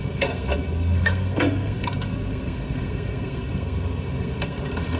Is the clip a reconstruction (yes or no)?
yes